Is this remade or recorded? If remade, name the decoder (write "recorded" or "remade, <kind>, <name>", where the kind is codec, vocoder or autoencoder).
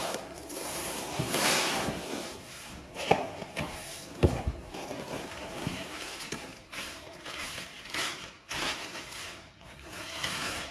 remade, codec, SNAC